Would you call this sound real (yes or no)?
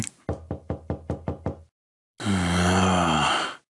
yes